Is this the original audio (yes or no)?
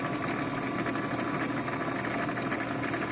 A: yes